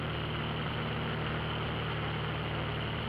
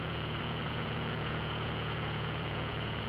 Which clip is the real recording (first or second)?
first